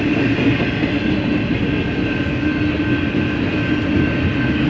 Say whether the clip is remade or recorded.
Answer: recorded